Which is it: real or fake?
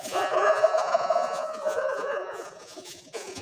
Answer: fake